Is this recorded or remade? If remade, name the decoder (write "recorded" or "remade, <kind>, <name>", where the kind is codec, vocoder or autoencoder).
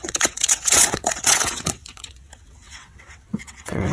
remade, vocoder, WaveNeXt